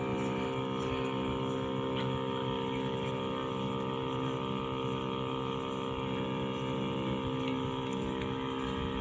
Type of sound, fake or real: real